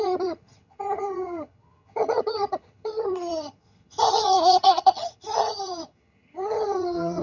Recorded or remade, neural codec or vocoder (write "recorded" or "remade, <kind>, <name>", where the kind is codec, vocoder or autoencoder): remade, vocoder, HiFi-GAN